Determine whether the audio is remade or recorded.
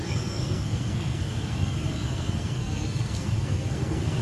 remade